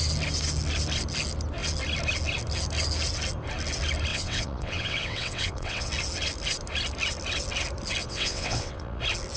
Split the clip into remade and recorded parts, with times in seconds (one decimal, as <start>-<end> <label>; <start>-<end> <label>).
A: 0.0-4.1 recorded; 4.1-5.9 remade; 5.9-8.0 recorded; 8.0-9.0 remade; 9.0-9.4 recorded